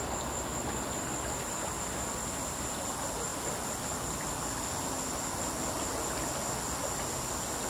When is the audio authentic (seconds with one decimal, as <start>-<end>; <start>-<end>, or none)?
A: 0.0-7.7